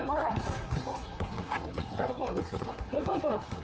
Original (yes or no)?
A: no